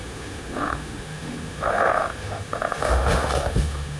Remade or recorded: remade